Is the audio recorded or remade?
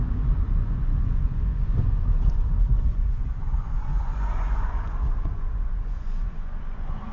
remade